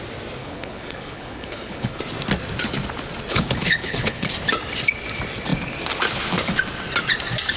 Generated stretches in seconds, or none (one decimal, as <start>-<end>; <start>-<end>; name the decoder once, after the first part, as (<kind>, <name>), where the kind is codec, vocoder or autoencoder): 0.4-2.0 (codec, HILCodec); 3.3-4.3